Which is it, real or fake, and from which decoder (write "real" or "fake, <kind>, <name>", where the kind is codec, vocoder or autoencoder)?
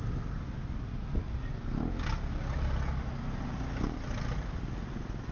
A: real